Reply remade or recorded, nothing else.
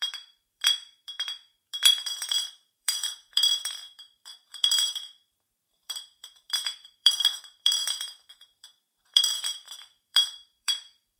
remade